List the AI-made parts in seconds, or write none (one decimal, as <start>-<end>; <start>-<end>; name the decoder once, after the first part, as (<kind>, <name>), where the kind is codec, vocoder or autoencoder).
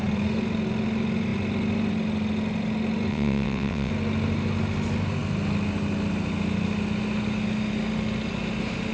3.1-3.9 (vocoder, WaveNeXt)